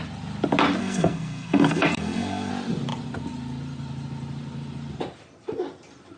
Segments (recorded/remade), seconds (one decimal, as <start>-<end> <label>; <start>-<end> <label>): 0.0-0.8 recorded; 0.8-2.5 remade; 2.5-6.2 recorded